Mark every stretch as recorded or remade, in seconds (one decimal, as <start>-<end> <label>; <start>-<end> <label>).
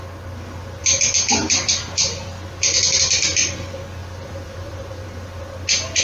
0.0-0.8 recorded; 0.8-3.5 remade; 3.5-4.0 recorded; 4.0-5.4 remade; 5.4-6.0 recorded